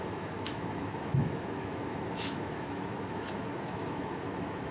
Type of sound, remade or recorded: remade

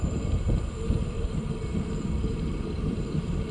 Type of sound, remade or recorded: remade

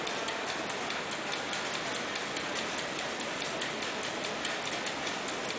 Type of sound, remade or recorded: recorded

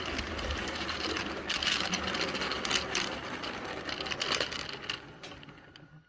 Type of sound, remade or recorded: recorded